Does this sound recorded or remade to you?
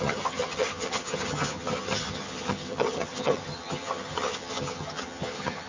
remade